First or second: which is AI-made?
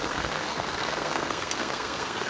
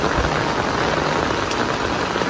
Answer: first